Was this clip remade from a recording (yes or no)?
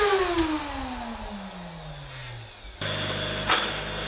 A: no